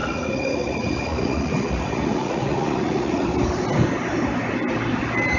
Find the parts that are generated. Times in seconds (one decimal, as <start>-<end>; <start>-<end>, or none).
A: 0.0-3.2